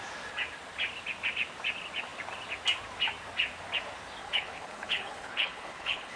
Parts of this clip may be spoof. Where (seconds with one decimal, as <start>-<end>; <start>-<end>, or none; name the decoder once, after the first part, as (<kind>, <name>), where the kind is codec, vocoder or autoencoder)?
4.2-6.2 (codec, HILCodec)